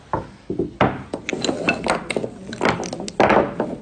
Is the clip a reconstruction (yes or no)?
no